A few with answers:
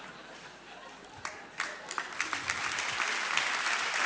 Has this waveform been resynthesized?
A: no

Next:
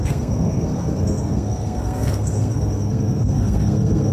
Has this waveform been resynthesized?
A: yes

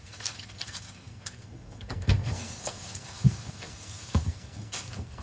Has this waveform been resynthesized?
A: yes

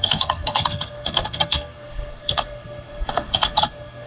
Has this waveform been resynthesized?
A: yes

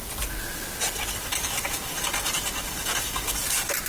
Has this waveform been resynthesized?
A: no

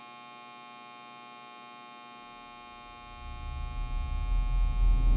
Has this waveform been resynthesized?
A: no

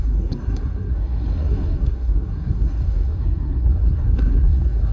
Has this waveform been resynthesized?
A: yes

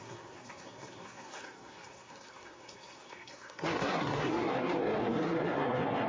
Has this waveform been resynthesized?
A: yes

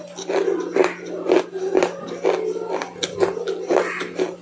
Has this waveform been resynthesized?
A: no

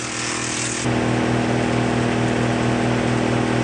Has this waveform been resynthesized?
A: no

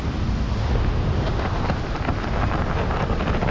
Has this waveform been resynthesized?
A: no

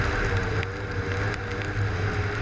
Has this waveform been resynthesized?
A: no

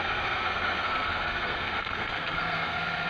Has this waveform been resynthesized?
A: yes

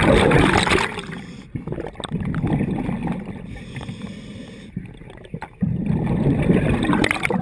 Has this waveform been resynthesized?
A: no